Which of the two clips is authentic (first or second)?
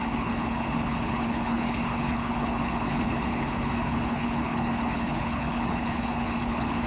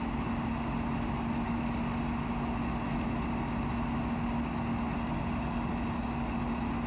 second